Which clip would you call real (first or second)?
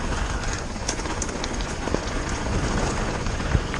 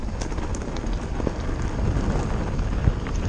second